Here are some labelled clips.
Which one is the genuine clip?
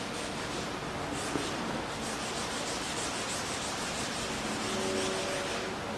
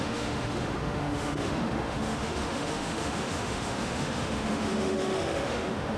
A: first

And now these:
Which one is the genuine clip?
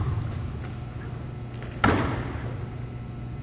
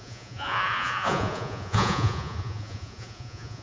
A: first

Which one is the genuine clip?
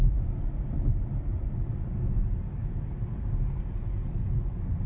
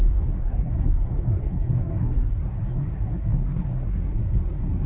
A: first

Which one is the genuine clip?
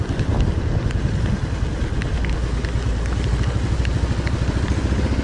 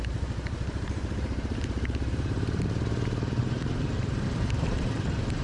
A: first